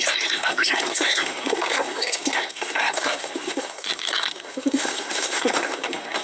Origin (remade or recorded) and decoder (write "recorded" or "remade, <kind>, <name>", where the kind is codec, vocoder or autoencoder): remade, codec, SNAC